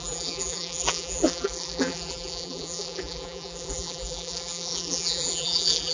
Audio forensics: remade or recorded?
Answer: remade